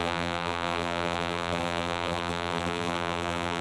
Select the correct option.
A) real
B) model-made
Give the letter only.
B